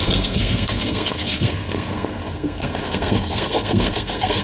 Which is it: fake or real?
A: fake